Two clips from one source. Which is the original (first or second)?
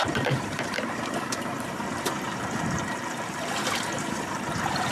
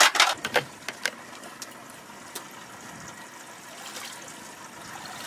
second